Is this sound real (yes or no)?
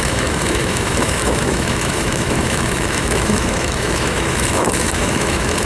no